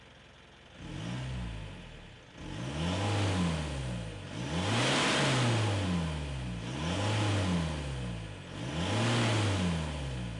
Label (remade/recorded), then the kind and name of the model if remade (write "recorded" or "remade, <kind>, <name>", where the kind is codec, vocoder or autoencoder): recorded